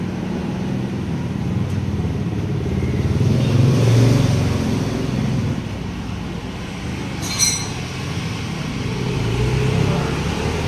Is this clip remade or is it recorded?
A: recorded